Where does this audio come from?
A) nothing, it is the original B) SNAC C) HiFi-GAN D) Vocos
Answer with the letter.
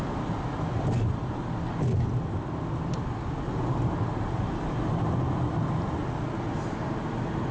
A